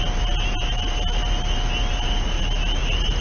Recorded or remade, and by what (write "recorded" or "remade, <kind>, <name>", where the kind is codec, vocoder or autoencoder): recorded